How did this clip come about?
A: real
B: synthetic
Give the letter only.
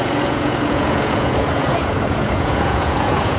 B